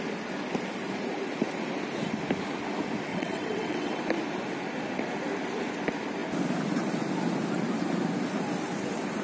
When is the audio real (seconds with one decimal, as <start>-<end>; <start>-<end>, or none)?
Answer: 0.0-3.1; 4.0-9.2